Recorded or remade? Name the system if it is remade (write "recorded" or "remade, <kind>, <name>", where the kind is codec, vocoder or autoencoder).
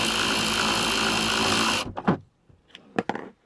recorded